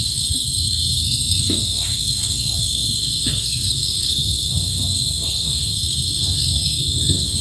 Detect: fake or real fake